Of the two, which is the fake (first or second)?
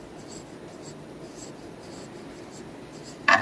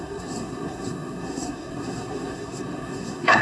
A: second